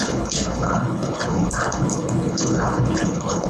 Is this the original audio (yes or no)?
no